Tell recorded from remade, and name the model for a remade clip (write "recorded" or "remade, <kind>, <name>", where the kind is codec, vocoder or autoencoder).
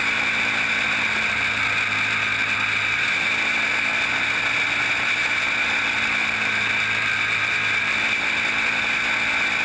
recorded